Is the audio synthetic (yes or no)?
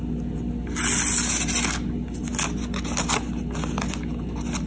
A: no